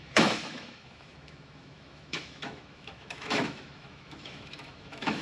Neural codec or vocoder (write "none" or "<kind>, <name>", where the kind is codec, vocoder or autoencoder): autoencoder, DAC-VAE